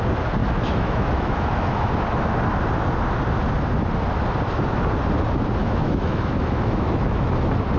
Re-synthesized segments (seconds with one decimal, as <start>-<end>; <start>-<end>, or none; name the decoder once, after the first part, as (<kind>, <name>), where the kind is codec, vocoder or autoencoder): 0.4-1.9 (autoencoder, DAC-VAE); 5.6-7.3